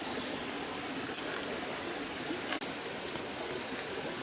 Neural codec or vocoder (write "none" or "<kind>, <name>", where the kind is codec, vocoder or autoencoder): none